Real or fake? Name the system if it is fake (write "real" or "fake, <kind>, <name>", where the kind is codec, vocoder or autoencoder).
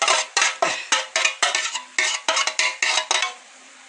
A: real